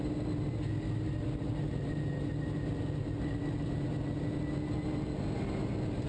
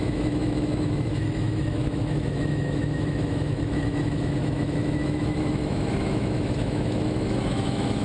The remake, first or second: second